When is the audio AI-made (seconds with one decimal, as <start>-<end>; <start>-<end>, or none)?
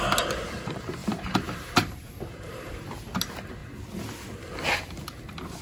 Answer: 1.0-3.2